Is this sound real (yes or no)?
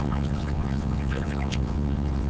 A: no